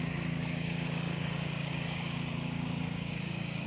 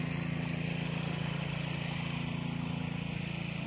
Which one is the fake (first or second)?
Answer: first